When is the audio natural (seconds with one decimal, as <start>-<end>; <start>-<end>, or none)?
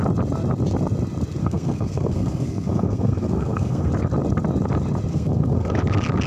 0.0-1.4; 3.9-5.1; 5.8-6.3